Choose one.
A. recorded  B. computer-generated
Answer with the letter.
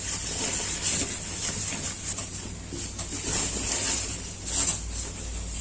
A